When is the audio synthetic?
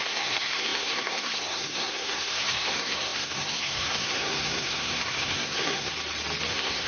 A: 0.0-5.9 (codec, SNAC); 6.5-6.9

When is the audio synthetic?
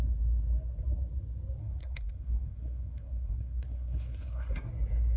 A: 1.6-4.7 (codec, SNAC)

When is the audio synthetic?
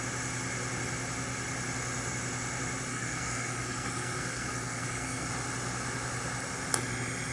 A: 2.9-5.3 (codec, SNAC)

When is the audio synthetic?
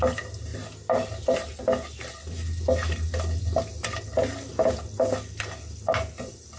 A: none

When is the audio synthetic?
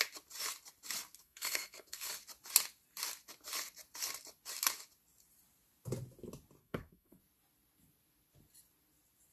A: 1.2-2.1 (codec, SNAC); 6.6-7.2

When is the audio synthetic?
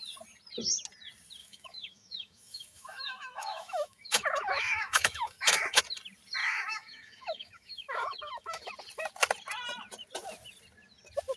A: 1.4-5.8 (autoencoder, DAC-VAE); 6.4-8.7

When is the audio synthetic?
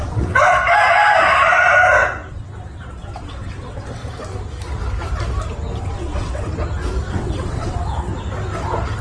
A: 0.0-0.6 (vocoder, WaveNeXt); 2.3-4.0; 5.8-6.5; 7.1-8.1